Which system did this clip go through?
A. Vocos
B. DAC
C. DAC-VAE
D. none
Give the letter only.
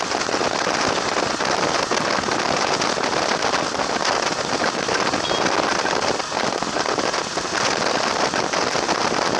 D